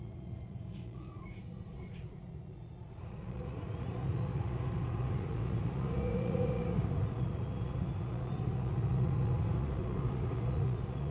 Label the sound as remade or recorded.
remade